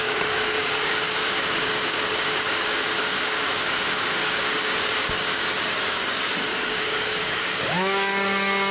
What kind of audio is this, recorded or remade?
remade